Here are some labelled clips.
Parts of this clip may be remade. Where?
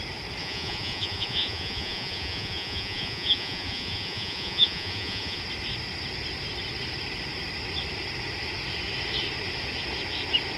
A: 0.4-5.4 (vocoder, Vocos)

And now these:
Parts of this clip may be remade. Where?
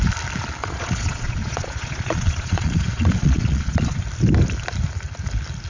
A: 0.6-4.0 (vocoder, Vocos)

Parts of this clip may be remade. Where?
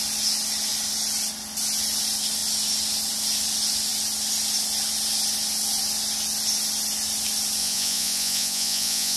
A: 7.6-9.2 (vocoder, Vocos)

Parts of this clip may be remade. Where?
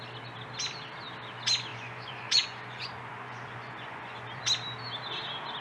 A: 1.7-4.4 (vocoder, Vocos)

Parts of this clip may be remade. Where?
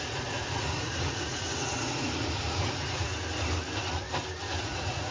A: 0.0-3.1 (vocoder, Vocos); 4.6-5.1